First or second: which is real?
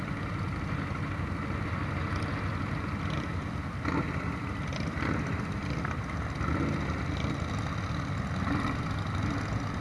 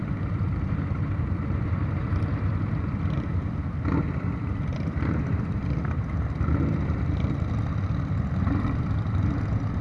first